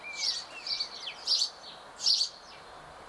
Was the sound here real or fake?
real